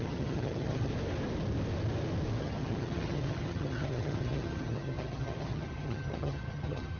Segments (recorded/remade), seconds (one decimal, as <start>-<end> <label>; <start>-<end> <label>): 0.0-0.9 remade; 0.9-2.4 recorded; 2.4-7.0 remade